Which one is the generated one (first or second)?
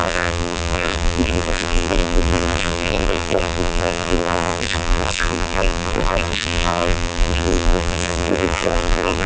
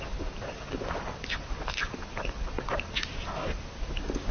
first